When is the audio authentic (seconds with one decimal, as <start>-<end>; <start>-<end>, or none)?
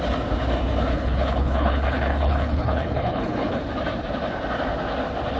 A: 0.0-0.9; 3.6-5.4